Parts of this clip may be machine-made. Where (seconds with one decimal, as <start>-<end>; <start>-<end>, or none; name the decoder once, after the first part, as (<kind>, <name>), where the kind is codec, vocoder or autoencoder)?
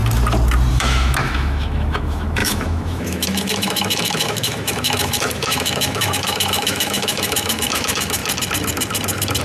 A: 0.7-8.2 (autoencoder, DAC-VAE)